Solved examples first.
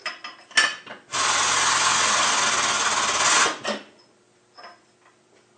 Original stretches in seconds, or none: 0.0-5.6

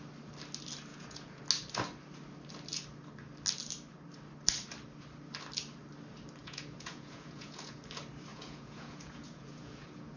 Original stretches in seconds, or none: 0.0-0.9; 1.4-6.4; 7.8-8.3

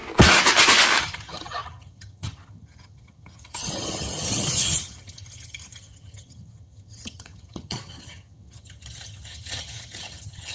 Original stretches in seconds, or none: 0.0-1.0

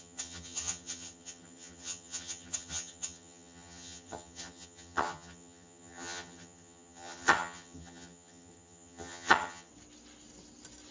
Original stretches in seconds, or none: 9.7-10.9

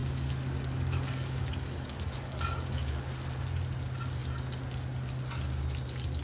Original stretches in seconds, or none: 2.9-6.2

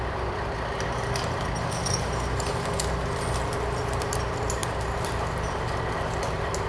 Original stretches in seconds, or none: 0.0-6.7

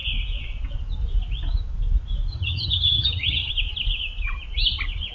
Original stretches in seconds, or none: 0.0-2.3; 3.5-5.1

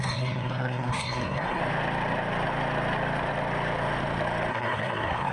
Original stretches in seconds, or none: 1.6-4.5